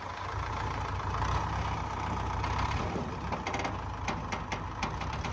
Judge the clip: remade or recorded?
recorded